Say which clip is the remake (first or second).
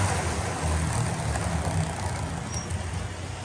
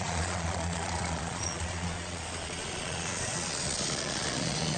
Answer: second